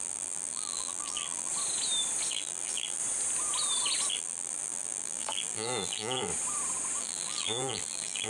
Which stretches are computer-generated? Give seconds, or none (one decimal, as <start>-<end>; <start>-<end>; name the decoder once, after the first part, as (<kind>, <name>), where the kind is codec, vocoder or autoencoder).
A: 0.0-1.5 (vocoder, BigVGAN v2); 2.3-3.0; 4.1-6.3; 7.0-8.3